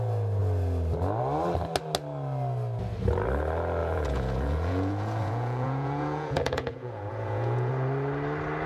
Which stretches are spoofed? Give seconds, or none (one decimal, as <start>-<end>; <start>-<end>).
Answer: 3.8-7.7

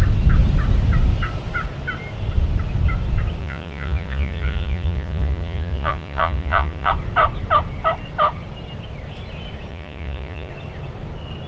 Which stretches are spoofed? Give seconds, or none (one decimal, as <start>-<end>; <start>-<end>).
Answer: 3.4-6.9; 9.7-10.5

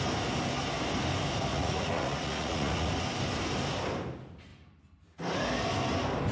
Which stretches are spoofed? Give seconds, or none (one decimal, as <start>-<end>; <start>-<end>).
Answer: 1.5-2.9

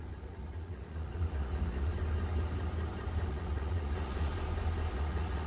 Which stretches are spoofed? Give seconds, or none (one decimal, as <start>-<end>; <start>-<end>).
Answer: 0.0-1.9; 3.3-4.3; 4.9-5.5

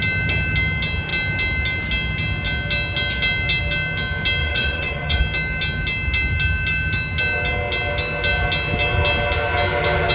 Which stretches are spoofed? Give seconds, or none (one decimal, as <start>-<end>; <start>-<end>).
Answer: 4.4-5.2

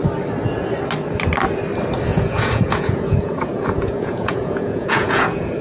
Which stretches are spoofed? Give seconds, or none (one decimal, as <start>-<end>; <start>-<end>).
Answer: 2.1-5.6